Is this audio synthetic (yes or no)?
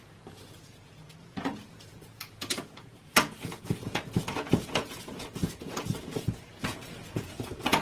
yes